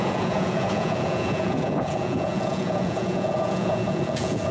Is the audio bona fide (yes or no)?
no